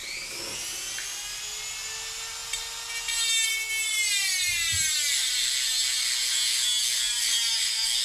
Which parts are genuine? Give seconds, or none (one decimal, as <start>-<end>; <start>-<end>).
0.0-8.0